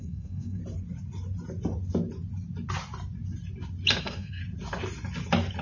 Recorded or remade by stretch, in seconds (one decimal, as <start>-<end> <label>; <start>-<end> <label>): 0.0-0.6 remade; 0.6-4.0 recorded; 4.0-4.4 remade; 4.4-5.6 recorded